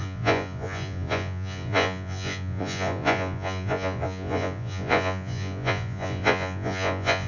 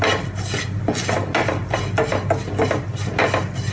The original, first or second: second